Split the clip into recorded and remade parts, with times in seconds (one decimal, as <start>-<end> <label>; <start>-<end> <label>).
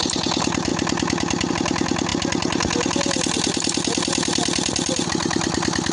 0.0-5.9 recorded